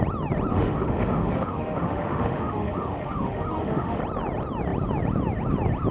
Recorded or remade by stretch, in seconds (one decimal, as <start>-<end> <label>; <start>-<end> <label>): 0.0-0.5 recorded; 0.5-4.0 remade; 4.0-5.9 recorded